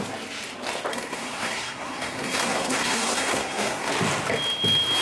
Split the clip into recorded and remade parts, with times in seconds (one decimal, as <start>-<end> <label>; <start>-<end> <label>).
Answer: 0.0-0.9 recorded; 0.9-3.9 remade; 3.9-5.0 recorded